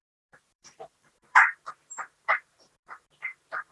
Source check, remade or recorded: remade